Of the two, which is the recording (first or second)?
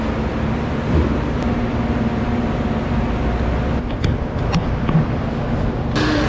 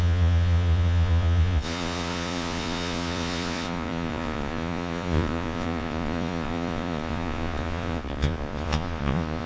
first